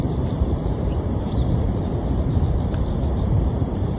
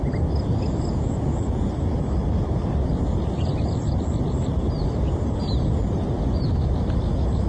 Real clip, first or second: second